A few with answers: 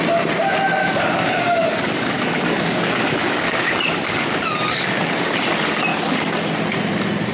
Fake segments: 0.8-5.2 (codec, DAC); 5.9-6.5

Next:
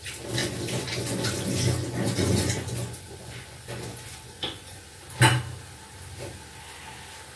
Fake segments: 0.4-4.8 (vocoder, Vocos)

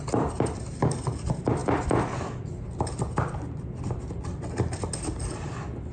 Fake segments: 1.6-2.2 (vocoder, BigVGAN v2)

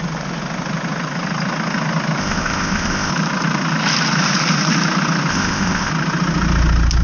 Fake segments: 2.2-3.1 (codec, ZipCodec); 5.3-5.9

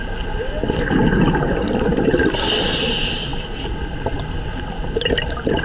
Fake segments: none